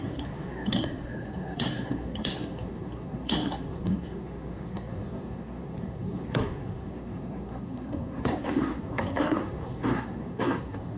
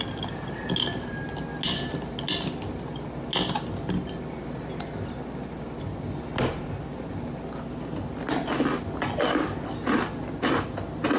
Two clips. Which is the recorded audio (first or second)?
second